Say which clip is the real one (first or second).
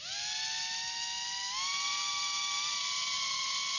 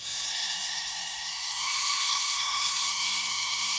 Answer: first